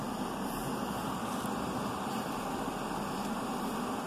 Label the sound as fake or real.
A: real